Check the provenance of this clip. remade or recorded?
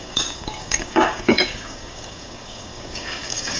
remade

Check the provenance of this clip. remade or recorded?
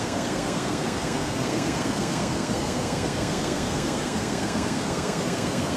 remade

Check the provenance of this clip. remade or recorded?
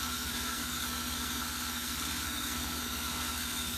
remade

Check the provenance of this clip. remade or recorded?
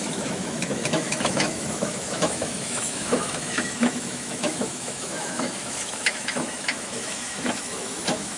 remade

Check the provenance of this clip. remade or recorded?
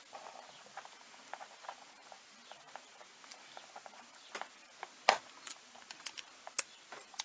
recorded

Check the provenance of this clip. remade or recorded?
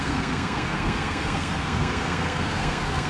remade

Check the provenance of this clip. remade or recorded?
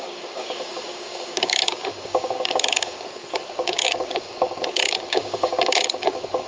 remade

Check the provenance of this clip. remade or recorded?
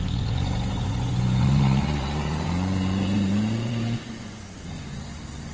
remade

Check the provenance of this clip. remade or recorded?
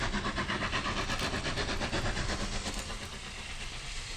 recorded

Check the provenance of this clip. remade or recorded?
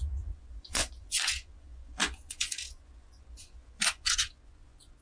remade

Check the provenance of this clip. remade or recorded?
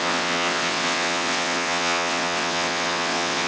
remade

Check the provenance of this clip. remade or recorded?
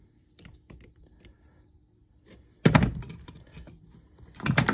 recorded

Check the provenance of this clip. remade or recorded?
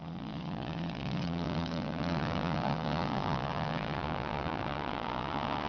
remade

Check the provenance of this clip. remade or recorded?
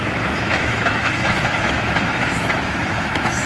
remade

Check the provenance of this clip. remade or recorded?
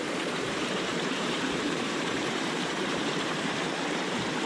remade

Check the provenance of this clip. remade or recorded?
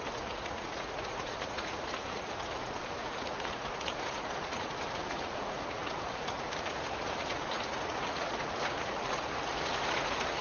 remade